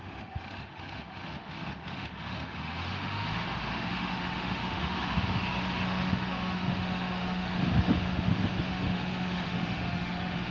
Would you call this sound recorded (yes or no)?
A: no